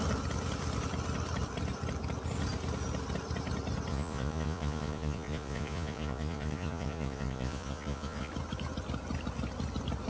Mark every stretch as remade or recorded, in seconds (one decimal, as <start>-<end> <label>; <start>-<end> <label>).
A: 0.0-3.9 recorded; 3.9-8.3 remade; 8.3-10.1 recorded